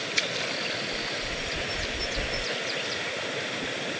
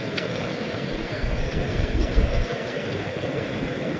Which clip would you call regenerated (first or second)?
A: second